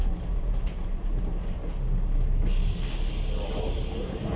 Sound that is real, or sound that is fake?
real